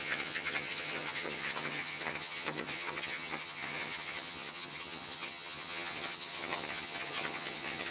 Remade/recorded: remade